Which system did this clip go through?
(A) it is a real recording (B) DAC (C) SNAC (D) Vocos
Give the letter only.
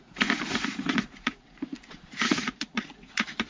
D